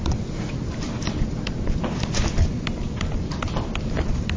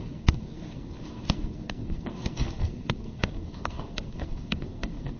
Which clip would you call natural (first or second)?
first